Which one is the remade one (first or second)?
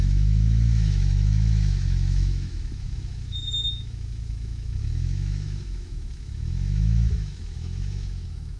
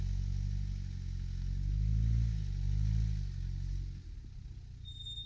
first